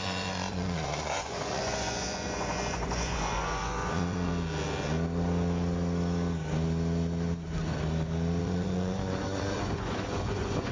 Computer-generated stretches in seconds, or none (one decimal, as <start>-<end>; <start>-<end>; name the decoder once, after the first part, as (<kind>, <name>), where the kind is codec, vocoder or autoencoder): 0.0-4.3 (vocoder, Vocos); 8.4-10.7